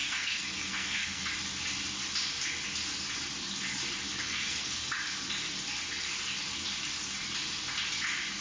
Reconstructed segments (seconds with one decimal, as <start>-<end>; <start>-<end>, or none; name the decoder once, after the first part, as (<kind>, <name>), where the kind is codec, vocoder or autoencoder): 0.0-1.3 (codec, SNAC); 4.2-4.7